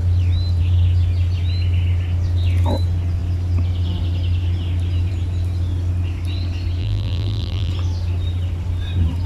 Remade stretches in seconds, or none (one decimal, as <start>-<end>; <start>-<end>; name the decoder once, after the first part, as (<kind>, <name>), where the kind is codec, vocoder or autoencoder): 6.8-7.7 (vocoder, BigVGAN v2)